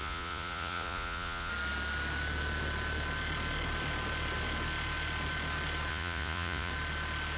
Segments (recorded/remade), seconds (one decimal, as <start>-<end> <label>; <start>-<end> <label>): 0.0-1.5 remade; 1.5-5.9 recorded; 5.9-6.7 remade; 6.7-7.4 recorded